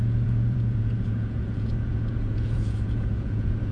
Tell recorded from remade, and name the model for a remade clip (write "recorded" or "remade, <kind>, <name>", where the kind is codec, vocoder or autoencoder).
remade, vocoder, Vocos